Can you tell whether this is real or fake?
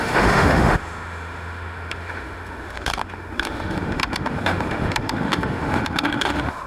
fake